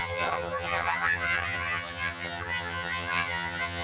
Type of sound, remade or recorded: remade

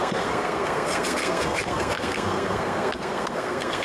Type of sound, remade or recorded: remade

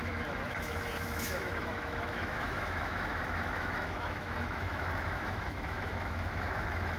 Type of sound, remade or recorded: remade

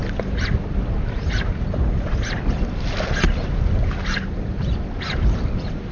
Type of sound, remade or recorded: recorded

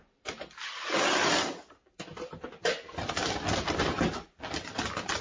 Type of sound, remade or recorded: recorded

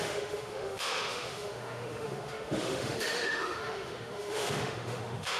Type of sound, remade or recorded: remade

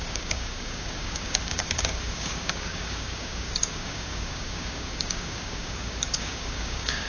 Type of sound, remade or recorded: remade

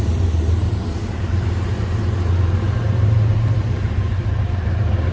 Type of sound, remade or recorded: remade